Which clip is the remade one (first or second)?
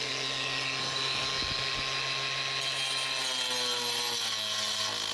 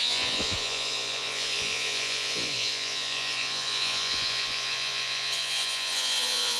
second